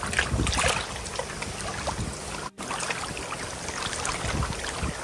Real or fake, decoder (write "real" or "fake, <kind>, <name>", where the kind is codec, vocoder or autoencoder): real